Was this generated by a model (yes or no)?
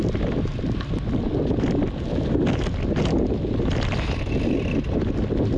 no